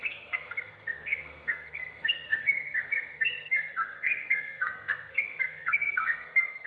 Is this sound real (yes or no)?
no